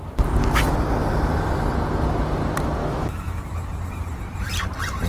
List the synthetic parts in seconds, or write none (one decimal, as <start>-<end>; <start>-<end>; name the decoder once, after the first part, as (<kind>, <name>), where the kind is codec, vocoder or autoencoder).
2.8-3.4 (autoencoder, DAC-VAE)